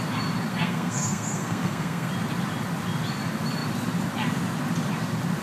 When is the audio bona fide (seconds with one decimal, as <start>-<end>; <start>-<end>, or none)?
0.0-0.5; 2.1-5.4